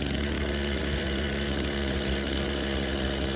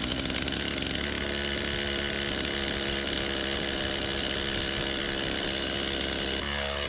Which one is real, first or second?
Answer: second